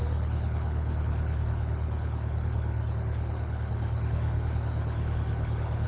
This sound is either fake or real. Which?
fake